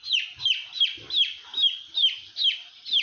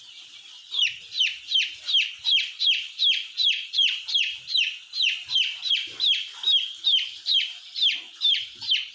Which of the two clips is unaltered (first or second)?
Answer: first